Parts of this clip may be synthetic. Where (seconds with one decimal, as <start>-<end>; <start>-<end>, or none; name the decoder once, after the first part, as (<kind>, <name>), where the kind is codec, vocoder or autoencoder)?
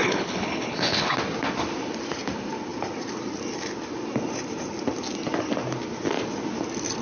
0.0-1.1 (codec, HILCodec)